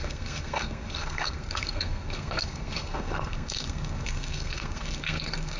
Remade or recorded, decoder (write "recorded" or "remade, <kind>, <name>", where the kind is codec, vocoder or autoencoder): remade, codec, SNAC